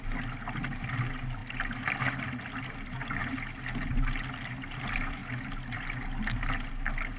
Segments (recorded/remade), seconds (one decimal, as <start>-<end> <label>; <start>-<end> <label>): 0.0-7.2 recorded